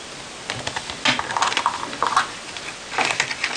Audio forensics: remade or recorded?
recorded